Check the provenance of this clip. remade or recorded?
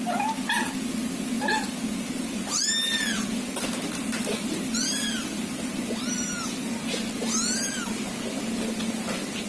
recorded